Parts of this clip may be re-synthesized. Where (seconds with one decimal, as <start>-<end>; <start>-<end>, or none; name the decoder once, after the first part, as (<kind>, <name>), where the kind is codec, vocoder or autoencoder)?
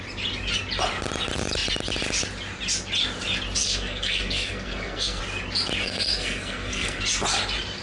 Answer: 3.6-5.2 (codec, SNAC); 5.8-7.0